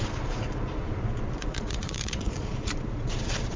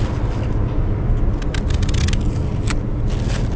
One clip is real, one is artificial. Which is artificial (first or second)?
first